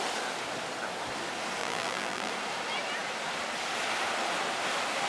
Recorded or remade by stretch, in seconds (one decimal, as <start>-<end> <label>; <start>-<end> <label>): 0.0-1.6 recorded; 1.6-2.3 remade; 2.3-5.1 recorded